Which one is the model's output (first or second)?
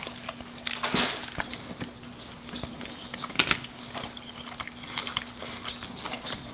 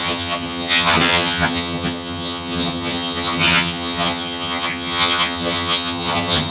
second